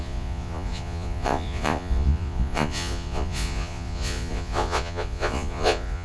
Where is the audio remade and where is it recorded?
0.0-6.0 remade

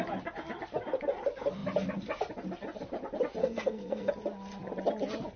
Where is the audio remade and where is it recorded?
0.0-3.4 recorded; 3.4-4.1 remade; 4.1-5.4 recorded

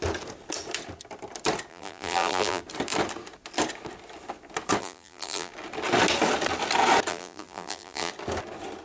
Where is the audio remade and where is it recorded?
0.0-1.7 recorded; 1.7-2.6 remade; 2.6-4.8 recorded; 4.8-5.5 remade; 5.5-7.1 recorded; 7.1-8.1 remade; 8.1-8.8 recorded

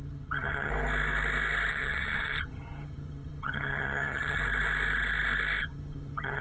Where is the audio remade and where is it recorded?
0.0-0.7 remade; 0.7-1.7 recorded; 1.7-4.4 remade; 4.4-5.6 recorded; 5.6-6.4 remade